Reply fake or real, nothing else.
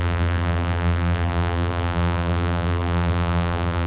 fake